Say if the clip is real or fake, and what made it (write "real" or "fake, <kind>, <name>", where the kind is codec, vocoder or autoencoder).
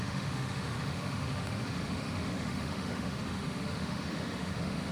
fake, autoencoder, DAC-VAE